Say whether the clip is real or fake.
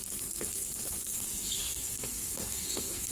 fake